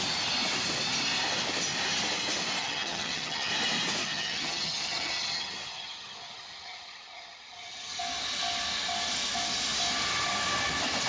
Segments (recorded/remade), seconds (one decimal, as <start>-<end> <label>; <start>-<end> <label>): 0.0-2.6 recorded; 2.6-3.5 remade; 3.5-4.0 recorded; 4.0-8.0 remade; 8.0-11.1 recorded